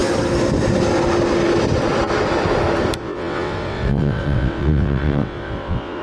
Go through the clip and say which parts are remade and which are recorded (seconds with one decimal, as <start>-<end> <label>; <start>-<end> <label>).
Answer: 0.0-3.0 recorded; 3.0-6.0 remade